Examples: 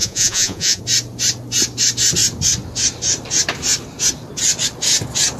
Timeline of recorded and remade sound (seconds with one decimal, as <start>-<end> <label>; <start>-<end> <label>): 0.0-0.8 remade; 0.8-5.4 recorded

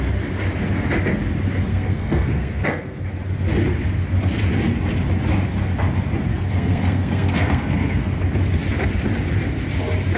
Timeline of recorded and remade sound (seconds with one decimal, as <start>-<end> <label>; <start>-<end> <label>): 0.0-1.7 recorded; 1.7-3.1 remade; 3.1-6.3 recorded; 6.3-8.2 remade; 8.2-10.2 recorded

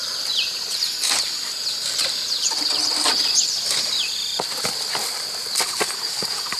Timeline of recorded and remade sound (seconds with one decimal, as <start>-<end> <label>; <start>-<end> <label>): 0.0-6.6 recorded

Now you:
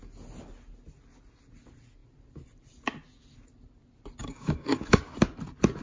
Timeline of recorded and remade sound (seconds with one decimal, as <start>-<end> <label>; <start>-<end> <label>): 0.0-4.2 recorded; 4.2-5.0 remade; 5.0-5.8 recorded

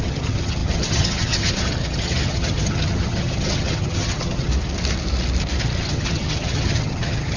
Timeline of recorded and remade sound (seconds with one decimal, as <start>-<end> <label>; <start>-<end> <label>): 0.0-4.5 remade; 4.5-5.6 recorded; 5.6-7.4 remade